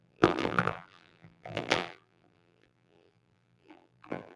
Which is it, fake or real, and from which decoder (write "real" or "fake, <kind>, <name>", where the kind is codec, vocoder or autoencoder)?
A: fake, vocoder, BigVGAN v2